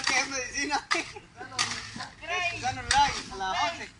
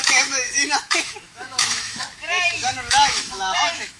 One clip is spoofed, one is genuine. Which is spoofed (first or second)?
second